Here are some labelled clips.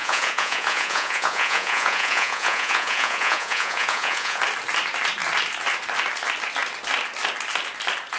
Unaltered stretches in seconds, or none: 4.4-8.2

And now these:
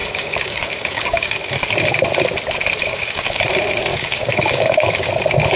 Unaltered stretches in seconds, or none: 1.5-2.8; 3.4-3.9; 5.1-5.6

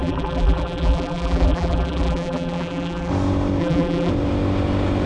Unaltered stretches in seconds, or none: 3.1-3.6; 4.1-5.1

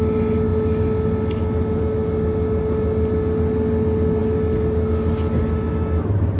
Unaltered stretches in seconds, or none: 0.0-6.4

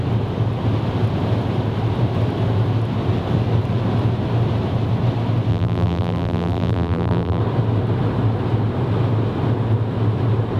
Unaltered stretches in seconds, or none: 0.0-5.5; 7.4-10.6

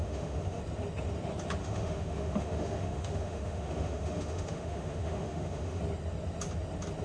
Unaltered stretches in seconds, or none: 0.6-1.6; 5.8-7.0

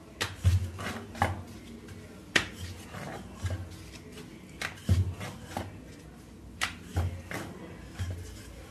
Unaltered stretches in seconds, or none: 0.0-8.7

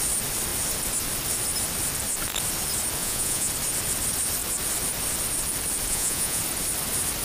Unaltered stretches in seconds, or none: 0.0-3.0; 3.5-5.9; 6.4-7.2